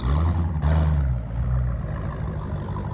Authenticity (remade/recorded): remade